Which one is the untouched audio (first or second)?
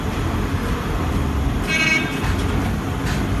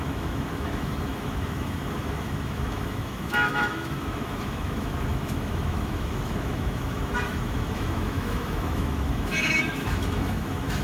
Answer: first